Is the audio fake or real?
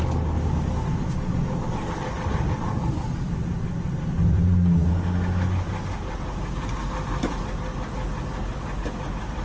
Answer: real